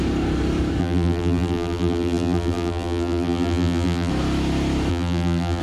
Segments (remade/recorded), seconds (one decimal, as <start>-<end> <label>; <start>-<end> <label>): 0.0-0.8 recorded; 0.8-4.1 remade; 4.1-4.9 recorded; 4.9-5.6 remade